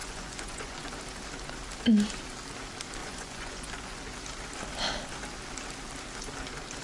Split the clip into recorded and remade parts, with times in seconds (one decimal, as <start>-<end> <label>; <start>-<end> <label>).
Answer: 0.0-0.9 remade; 0.9-3.0 recorded; 3.0-4.0 remade; 4.0-6.8 recorded